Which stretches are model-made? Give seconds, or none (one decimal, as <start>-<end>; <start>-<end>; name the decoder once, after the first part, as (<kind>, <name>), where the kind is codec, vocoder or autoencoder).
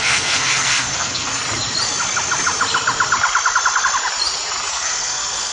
0.0-1.4 (codec, SNAC); 4.7-5.5